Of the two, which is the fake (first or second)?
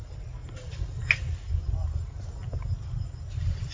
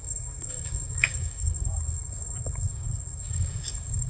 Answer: second